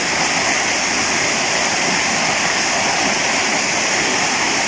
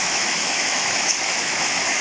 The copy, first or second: second